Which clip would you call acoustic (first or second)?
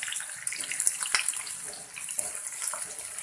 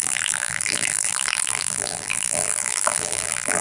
first